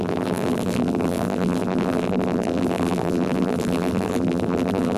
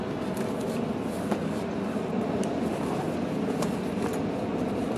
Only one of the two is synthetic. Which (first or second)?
first